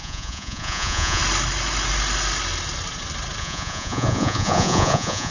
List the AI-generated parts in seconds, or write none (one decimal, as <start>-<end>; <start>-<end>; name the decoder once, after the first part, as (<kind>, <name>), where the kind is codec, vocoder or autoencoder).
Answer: 0.0-1.2 (vocoder, Vocos); 3.4-5.3